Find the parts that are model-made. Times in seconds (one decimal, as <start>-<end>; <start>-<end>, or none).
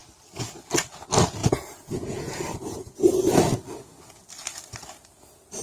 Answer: 1.4-2.4